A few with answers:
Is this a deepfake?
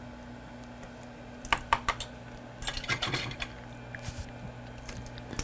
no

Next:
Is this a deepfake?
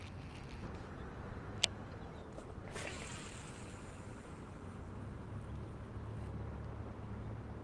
no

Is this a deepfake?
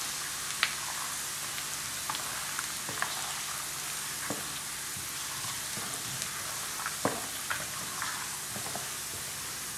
no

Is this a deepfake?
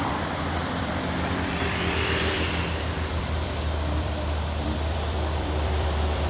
yes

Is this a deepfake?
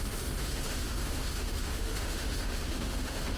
yes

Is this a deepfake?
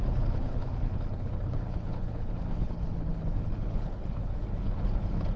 yes